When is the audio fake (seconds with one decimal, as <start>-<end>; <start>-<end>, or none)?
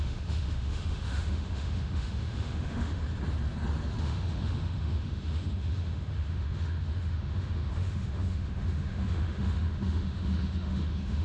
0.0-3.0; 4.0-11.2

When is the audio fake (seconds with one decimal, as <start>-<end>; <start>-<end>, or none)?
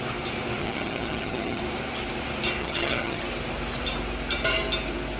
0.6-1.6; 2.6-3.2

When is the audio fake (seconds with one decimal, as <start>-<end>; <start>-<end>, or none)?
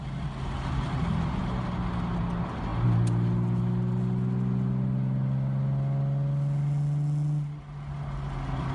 none